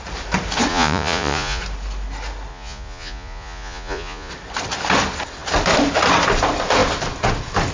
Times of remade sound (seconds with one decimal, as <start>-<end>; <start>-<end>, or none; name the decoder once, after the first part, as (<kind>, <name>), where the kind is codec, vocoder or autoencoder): 0.7-1.6 (vocoder, Vocos); 2.5-4.3